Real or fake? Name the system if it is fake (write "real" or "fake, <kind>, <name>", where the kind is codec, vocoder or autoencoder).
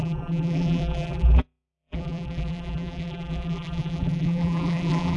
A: fake, vocoder, BigVGAN v2